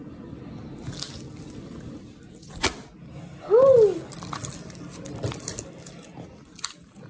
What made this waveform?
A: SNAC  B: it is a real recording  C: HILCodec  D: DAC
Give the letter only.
B